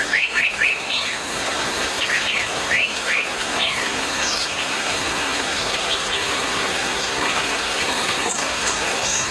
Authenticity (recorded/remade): remade